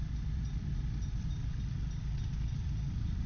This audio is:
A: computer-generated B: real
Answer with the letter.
B